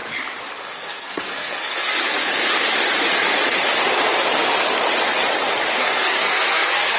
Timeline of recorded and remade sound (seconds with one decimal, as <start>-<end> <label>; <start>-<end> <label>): 0.0-0.6 recorded; 0.6-2.0 remade; 2.0-5.8 recorded; 5.8-7.0 remade